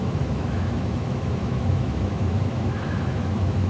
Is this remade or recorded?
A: remade